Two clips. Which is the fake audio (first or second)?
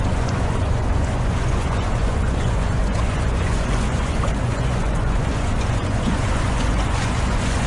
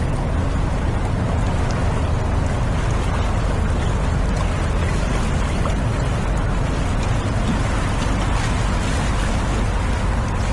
first